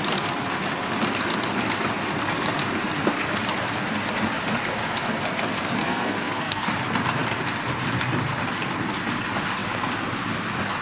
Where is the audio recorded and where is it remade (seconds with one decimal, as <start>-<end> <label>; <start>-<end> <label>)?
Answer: 0.0-5.8 recorded; 5.8-6.7 remade; 6.7-10.8 recorded

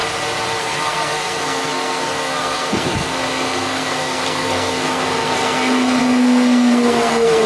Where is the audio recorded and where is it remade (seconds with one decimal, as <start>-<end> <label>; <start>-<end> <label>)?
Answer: 0.0-0.6 recorded; 0.6-7.5 remade

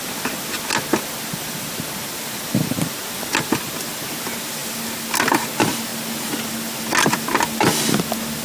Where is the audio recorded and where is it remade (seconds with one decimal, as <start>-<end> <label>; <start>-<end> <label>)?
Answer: 0.0-8.4 recorded

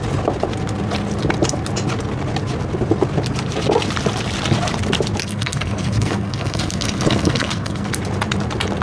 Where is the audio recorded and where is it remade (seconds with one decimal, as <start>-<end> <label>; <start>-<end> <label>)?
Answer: 0.0-5.2 recorded; 5.2-7.9 remade; 7.9-8.8 recorded

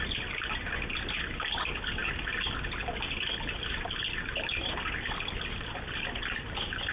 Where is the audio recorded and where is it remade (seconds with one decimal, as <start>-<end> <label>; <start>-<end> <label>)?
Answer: 0.0-6.9 recorded

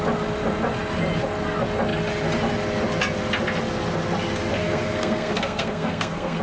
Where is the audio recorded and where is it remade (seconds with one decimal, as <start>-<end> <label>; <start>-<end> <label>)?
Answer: 0.0-4.6 recorded; 4.6-6.4 remade